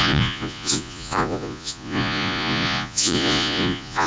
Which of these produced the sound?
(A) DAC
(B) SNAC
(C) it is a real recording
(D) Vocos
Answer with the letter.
D